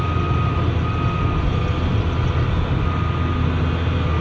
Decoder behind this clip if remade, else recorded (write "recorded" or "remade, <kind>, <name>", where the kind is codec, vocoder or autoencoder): recorded